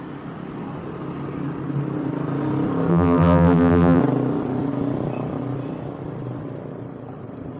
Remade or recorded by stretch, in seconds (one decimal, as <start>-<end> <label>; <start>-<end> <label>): 0.0-2.9 recorded; 2.9-4.0 remade; 4.0-7.6 recorded